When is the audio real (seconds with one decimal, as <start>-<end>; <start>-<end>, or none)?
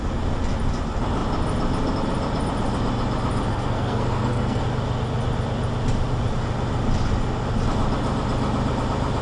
0.0-3.5; 4.6-9.2